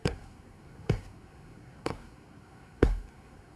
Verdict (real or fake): fake